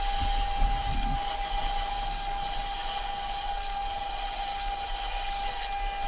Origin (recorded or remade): recorded